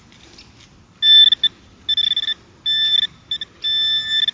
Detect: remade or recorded recorded